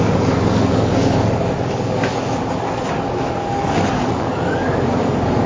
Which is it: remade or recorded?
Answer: remade